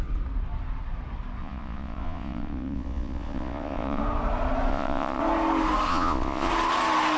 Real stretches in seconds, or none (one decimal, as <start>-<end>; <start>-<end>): 0.0-1.4; 4.0-4.7; 5.2-5.9; 6.5-7.2